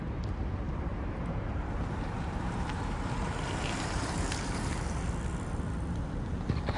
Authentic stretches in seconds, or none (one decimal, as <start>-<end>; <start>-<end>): 0.0-0.9; 5.0-6.8